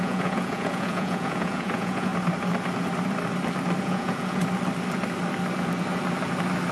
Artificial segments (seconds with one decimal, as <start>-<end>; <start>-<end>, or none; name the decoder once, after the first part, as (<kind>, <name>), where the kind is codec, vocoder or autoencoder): 0.0-2.1 (vocoder, Vocos); 3.8-4.4